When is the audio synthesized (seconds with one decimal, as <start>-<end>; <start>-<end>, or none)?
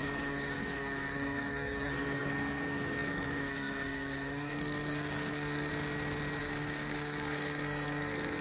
0.0-5.7; 6.4-8.4